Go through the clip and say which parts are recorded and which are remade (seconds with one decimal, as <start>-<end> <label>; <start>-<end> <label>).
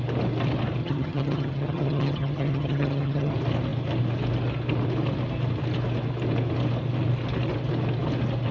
0.0-0.8 recorded; 0.8-3.3 remade; 3.3-8.5 recorded